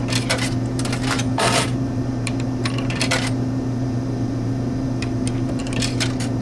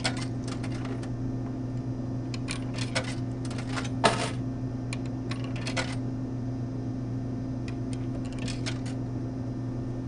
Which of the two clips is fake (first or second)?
first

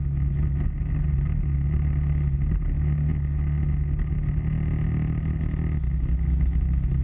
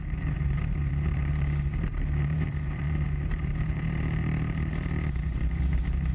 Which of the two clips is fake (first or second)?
second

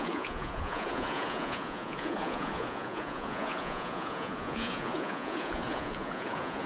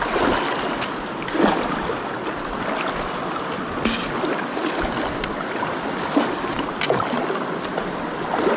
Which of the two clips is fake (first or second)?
first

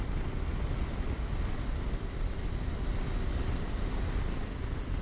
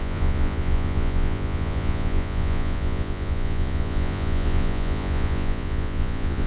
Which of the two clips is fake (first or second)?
second